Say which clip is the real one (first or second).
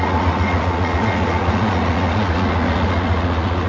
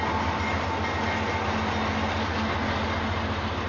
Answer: second